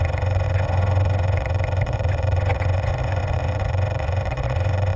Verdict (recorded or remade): remade